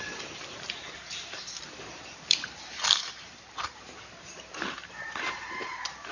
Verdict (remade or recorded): remade